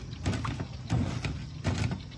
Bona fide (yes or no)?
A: yes